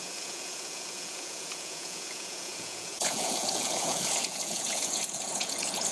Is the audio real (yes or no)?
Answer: no